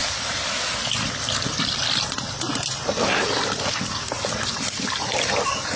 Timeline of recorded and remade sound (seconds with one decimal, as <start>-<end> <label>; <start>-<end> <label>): 0.0-5.8 remade